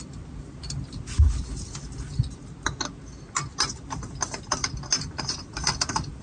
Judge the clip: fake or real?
real